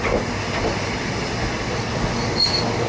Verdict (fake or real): real